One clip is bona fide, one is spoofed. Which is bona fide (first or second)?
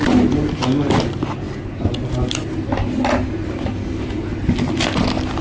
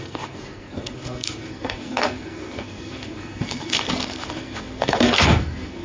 first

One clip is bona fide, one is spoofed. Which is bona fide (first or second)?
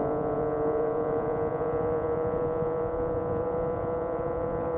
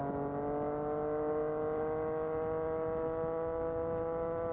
second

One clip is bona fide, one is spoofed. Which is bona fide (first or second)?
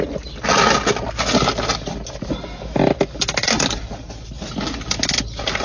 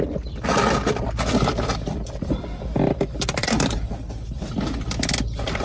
first